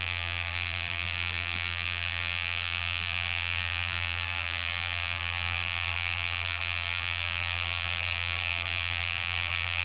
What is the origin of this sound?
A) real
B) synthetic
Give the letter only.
B